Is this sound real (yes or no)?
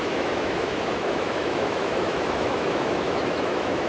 no